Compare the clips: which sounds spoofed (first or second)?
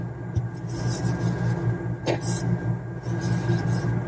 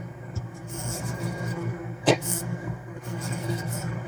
second